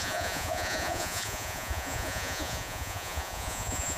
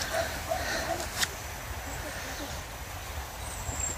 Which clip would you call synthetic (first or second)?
first